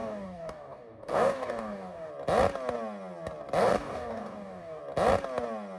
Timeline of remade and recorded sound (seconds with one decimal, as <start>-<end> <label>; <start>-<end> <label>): 0.0-2.1 remade; 2.1-3.6 recorded; 3.6-4.8 remade; 4.8-5.8 recorded